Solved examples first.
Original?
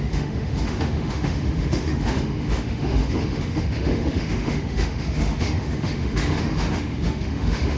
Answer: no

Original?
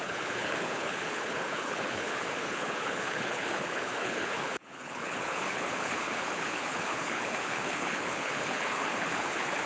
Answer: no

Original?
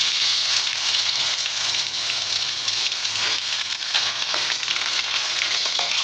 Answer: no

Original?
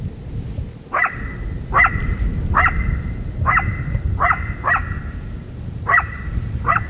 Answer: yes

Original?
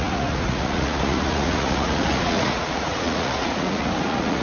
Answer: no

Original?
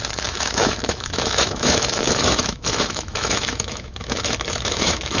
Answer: no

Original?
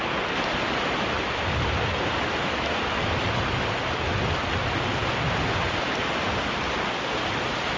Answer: yes